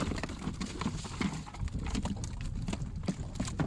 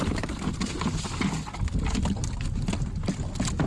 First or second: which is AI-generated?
first